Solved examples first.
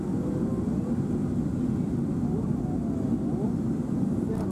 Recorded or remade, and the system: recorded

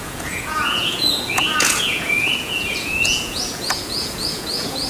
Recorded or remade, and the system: remade, vocoder, Vocos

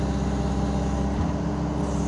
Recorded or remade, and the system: recorded